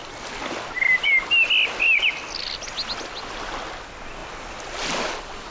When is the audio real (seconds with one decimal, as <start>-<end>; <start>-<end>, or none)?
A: 0.0-5.5